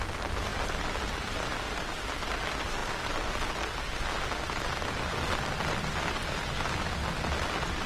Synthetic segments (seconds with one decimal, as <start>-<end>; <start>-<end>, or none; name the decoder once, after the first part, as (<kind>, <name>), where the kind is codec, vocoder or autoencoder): none